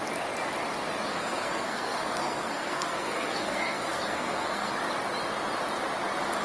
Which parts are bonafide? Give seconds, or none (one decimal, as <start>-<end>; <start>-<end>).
0.0-1.1; 4.7-6.4